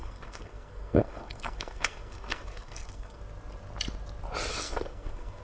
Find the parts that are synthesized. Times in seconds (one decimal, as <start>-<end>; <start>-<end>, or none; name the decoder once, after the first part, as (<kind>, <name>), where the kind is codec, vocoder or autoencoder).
0.0-3.2 (codec, SNAC); 4.5-5.4